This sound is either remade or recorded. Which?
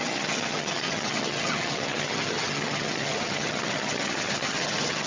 remade